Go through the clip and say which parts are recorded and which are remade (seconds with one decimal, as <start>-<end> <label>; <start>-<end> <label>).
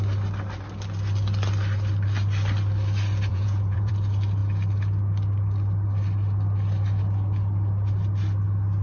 0.0-3.3 recorded; 3.3-3.9 remade; 3.9-8.8 recorded